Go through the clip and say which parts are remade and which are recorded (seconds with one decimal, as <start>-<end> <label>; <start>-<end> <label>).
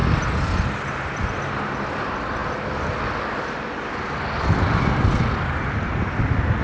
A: 0.0-6.6 recorded